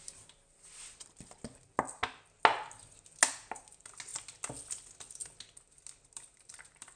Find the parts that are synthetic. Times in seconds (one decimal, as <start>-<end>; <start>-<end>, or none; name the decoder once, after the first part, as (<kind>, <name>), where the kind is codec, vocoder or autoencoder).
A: none

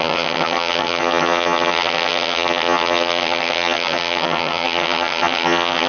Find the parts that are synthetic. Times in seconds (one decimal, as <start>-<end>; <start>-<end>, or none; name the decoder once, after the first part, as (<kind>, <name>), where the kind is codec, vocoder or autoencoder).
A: 0.0-5.9 (vocoder, HiFi-GAN)

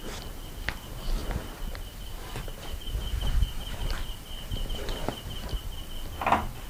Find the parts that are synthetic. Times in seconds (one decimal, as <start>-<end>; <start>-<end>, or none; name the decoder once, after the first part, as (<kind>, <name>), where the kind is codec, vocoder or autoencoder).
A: none

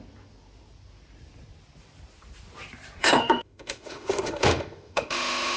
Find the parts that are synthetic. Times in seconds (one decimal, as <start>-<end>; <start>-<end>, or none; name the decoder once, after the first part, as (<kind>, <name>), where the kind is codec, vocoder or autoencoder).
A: 3.0-5.6 (autoencoder, DAC-VAE)

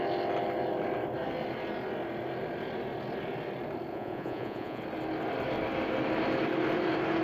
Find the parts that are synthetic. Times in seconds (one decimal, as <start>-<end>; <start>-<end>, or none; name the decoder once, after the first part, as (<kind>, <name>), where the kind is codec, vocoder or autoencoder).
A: 3.9-4.8 (vocoder, Vocos)

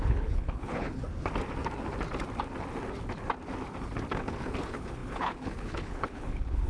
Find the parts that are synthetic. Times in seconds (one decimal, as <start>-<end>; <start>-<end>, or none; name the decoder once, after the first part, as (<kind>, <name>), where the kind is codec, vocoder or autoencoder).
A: 0.0-1.0 (codec, HILCodec); 4.2-6.7

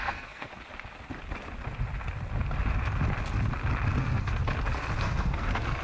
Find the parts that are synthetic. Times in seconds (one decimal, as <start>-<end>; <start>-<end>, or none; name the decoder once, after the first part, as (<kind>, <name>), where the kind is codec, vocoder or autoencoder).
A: 0.0-0.5 (codec, SNAC); 4.0-4.4; 5.0-5.8